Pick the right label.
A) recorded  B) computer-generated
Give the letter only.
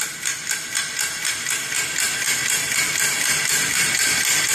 B